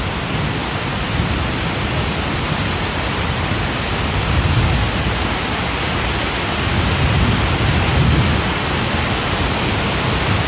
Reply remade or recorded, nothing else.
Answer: recorded